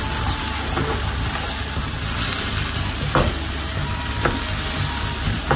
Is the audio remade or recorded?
recorded